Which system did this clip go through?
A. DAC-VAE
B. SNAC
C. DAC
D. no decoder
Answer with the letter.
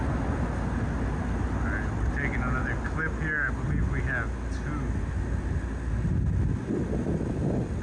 D